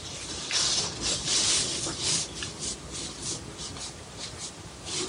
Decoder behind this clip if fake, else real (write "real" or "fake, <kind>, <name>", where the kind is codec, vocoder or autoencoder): real